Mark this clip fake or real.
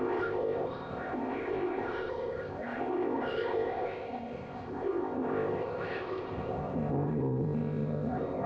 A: fake